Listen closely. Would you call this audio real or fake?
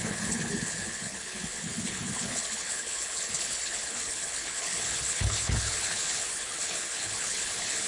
fake